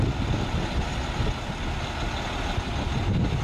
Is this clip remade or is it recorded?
recorded